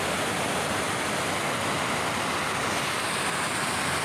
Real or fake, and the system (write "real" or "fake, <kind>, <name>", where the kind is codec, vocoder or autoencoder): real